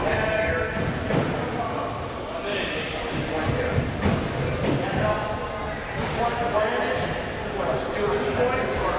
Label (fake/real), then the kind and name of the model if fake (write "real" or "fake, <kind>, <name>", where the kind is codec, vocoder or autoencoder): real